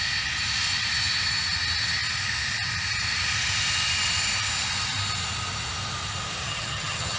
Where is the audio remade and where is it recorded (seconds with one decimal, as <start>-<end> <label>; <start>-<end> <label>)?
0.0-6.4 recorded; 6.4-7.2 remade

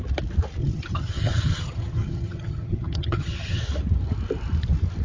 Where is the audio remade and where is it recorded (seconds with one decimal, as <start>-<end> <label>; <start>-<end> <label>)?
0.0-0.6 recorded; 0.6-3.6 remade; 3.6-5.0 recorded

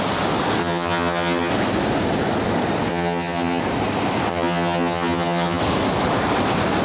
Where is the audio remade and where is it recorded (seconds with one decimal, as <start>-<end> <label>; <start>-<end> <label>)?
0.0-0.6 recorded; 0.6-1.5 remade; 1.5-2.9 recorded; 2.9-3.6 remade; 3.6-4.3 recorded; 4.3-5.6 remade; 5.6-6.8 recorded

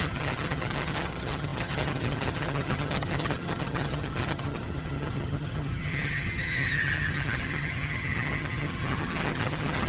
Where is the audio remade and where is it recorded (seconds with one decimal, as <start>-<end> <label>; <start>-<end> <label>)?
0.0-9.9 remade

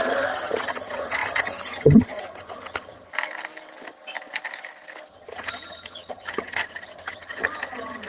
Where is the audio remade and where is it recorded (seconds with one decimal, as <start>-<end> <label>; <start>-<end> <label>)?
0.0-3.1 remade; 3.1-5.1 recorded; 5.1-8.1 remade